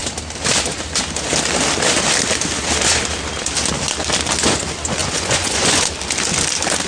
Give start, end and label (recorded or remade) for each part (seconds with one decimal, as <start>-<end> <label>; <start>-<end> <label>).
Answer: 0.0-5.0 recorded; 5.0-5.9 remade; 5.9-6.9 recorded